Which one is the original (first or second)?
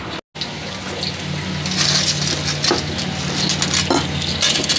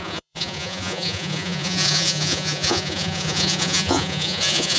first